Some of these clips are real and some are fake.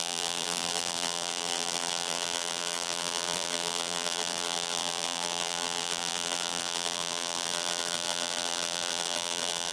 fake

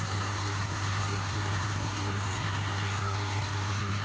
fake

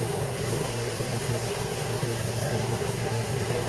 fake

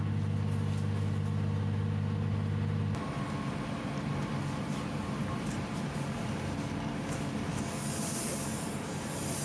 real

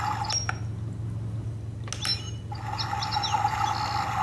real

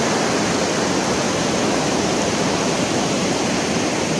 real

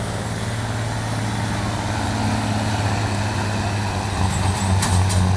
real